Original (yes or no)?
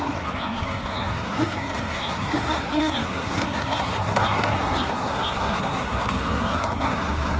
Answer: no